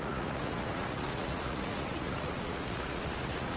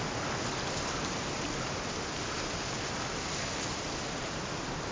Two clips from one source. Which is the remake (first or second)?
first